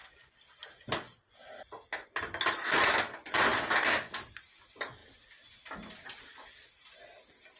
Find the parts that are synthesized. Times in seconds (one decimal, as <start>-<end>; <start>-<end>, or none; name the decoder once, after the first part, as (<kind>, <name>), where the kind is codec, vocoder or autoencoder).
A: none